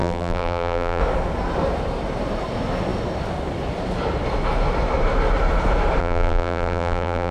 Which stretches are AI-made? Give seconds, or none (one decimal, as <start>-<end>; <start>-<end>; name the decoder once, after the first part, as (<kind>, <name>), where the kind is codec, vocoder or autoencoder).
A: 0.0-1.0 (vocoder, BigVGAN v2); 6.0-7.3